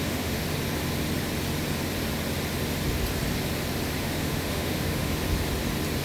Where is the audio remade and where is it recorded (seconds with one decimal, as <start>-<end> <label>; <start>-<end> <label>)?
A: 0.0-0.4 remade; 0.4-4.0 recorded; 4.0-5.2 remade; 5.2-6.0 recorded